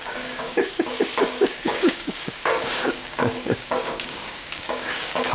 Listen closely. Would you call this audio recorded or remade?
remade